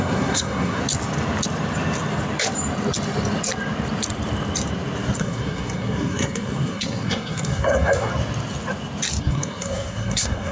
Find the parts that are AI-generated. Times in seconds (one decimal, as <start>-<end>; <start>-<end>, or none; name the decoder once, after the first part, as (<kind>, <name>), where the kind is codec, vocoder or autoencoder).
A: 0.0-0.8 (codec, SNAC); 5.2-8.1; 9.2-10.5